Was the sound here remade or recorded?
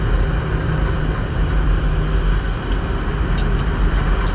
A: recorded